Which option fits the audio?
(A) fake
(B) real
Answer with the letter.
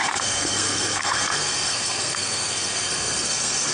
A